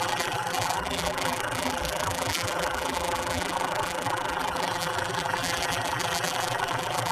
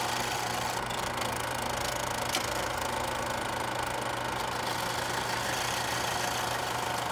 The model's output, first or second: first